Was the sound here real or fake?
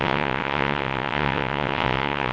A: fake